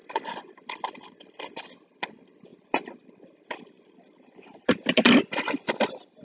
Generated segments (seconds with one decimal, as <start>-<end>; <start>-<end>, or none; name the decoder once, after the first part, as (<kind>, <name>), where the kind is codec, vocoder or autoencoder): none